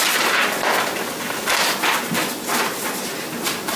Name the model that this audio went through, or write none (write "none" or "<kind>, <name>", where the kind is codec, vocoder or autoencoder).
none